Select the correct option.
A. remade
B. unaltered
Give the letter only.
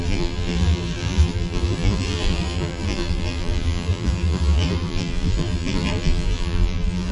A